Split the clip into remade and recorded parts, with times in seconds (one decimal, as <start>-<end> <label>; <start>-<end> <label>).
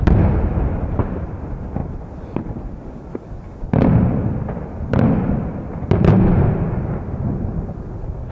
0.0-8.3 recorded